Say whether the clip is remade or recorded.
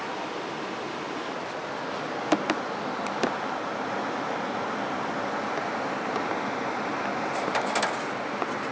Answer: recorded